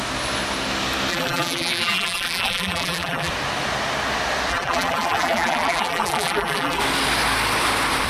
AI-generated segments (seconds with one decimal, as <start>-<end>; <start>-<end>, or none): 1.1-3.3; 4.5-6.8